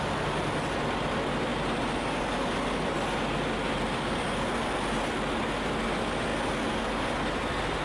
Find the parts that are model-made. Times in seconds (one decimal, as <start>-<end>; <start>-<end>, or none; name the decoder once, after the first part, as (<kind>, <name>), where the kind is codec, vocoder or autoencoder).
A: none